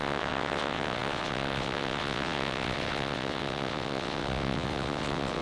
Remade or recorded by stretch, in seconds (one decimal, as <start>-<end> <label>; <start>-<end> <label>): 0.0-5.4 remade